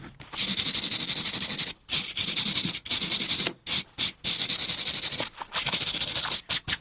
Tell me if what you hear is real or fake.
real